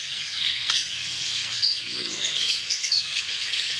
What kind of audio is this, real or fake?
fake